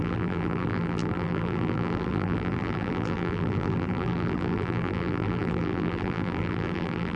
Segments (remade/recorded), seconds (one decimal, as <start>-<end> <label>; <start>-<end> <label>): 0.0-7.2 remade